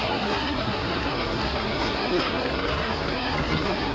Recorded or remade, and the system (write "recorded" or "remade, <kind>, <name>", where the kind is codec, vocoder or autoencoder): remade, codec, SNAC